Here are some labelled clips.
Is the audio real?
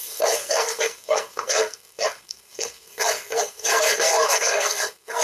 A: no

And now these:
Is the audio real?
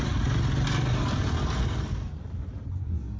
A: yes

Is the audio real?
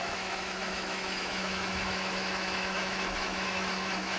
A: no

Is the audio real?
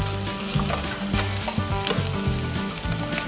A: yes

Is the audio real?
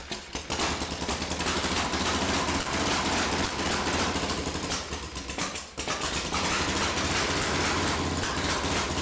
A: yes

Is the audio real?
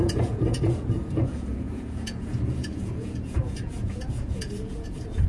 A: no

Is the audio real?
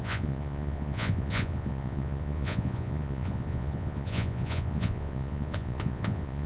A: no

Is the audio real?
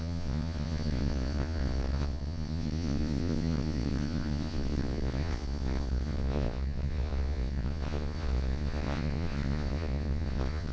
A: no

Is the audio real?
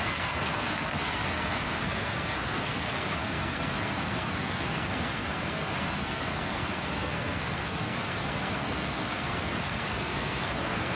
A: no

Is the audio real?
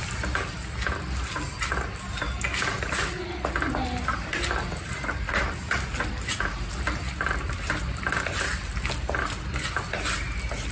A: yes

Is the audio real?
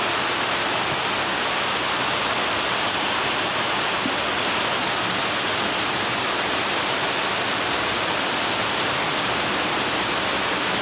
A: yes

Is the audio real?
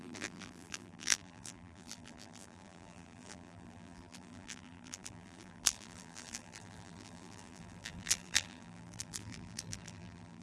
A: no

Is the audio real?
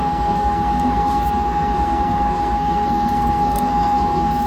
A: no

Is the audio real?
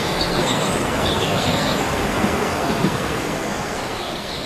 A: no